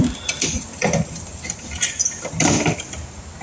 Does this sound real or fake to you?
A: real